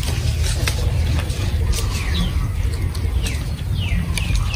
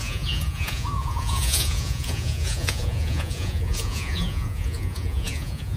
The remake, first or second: second